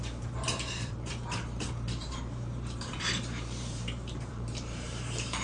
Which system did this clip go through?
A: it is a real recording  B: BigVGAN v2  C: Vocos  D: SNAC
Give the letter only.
B